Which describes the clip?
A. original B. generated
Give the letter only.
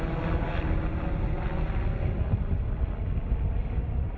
A